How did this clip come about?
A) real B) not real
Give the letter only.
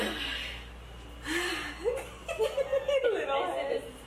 A